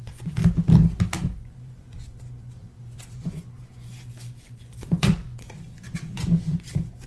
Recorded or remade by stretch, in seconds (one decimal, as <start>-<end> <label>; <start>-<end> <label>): 0.0-0.4 remade; 0.4-1.4 recorded; 1.4-7.1 remade